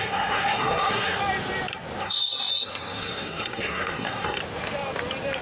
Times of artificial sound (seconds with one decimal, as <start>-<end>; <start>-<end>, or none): 0.0-1.2; 2.0-4.4